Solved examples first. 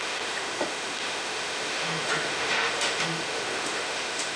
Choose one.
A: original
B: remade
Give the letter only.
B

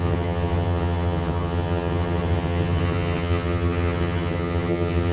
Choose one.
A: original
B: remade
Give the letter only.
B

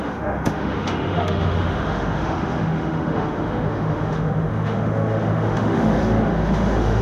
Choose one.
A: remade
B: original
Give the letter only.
A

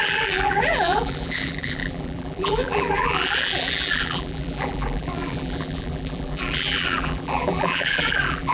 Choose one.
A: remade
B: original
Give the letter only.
A